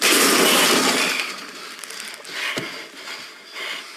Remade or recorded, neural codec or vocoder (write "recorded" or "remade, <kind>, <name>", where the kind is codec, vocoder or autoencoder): recorded